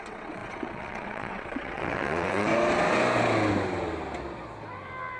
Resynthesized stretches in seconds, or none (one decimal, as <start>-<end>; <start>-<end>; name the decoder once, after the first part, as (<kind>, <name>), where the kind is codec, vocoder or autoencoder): 0.0-2.5 (vocoder, WaveNeXt)